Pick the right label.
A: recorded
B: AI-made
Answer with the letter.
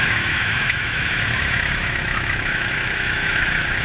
B